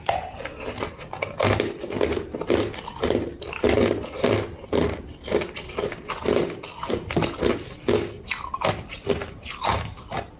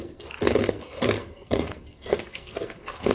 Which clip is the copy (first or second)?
second